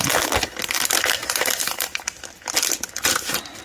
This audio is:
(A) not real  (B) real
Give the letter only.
B